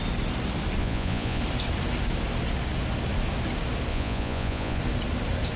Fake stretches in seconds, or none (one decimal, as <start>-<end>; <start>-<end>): 0.8-1.4; 3.9-4.8